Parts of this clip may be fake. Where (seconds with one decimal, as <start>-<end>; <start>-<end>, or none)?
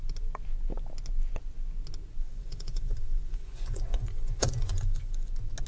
2.2-5.3